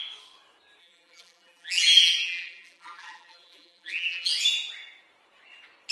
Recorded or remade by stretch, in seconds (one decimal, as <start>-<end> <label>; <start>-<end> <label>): 0.0-0.8 recorded; 0.8-4.3 remade; 4.3-5.9 recorded